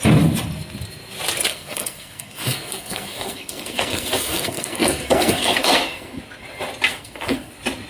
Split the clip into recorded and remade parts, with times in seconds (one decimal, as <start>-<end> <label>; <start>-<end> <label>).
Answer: 0.0-1.5 recorded; 1.5-6.2 remade; 6.2-6.9 recorded; 6.9-7.5 remade; 7.5-7.9 recorded